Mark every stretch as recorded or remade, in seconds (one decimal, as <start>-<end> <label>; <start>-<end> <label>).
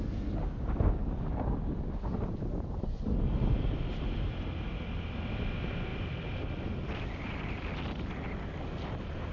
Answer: 0.0-5.9 recorded; 5.9-6.7 remade; 6.7-9.3 recorded